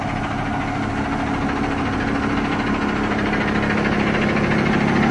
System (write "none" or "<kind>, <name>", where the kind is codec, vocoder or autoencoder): none